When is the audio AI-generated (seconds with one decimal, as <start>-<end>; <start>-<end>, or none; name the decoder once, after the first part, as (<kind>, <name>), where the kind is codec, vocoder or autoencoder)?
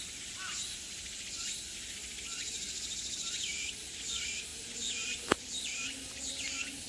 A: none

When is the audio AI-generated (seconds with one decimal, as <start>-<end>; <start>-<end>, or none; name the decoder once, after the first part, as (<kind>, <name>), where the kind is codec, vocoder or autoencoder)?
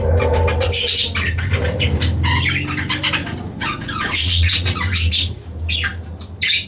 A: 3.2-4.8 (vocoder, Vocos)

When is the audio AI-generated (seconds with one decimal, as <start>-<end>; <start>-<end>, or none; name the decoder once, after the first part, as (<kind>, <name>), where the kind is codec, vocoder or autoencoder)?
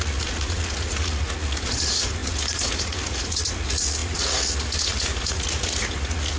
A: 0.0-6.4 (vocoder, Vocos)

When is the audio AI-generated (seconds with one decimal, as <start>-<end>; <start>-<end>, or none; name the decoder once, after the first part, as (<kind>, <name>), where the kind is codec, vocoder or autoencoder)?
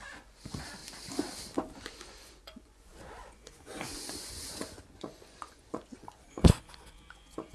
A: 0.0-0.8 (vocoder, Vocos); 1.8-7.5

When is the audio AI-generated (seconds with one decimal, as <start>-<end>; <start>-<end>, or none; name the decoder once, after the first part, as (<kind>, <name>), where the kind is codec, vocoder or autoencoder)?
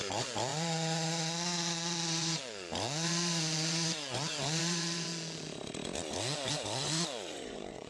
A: 0.0-5.1 (vocoder, Vocos); 6.1-7.9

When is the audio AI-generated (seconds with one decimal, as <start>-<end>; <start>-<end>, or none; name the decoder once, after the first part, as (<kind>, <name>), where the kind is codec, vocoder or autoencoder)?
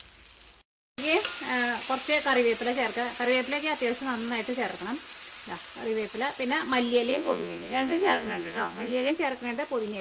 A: 7.1-9.1 (vocoder, Vocos)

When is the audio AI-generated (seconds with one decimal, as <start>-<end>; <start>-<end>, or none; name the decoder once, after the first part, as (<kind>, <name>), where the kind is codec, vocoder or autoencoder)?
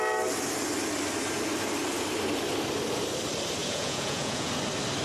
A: 3.6-4.5 (vocoder, Vocos)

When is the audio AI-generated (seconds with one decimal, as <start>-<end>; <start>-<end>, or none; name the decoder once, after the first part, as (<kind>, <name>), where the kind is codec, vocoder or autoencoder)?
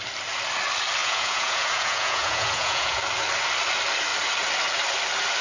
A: 1.0-3.0 (vocoder, Vocos)